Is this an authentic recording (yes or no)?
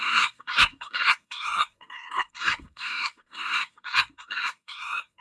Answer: no